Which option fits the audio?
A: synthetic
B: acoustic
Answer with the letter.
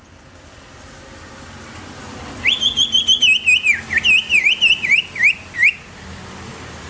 B